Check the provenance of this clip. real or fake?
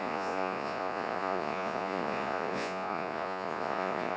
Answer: fake